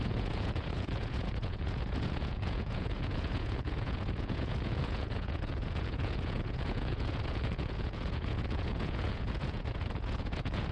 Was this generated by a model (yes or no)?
yes